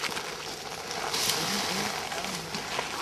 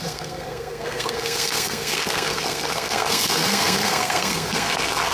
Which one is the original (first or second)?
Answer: first